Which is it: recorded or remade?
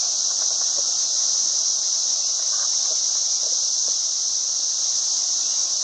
remade